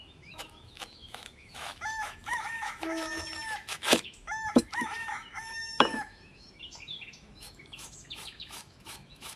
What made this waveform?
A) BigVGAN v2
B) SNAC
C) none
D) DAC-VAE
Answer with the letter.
D